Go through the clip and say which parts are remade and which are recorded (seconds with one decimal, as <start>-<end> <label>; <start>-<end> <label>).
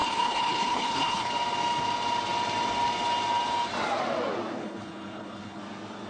0.0-1.3 remade; 1.3-4.6 recorded; 4.6-5.6 remade; 5.6-6.1 recorded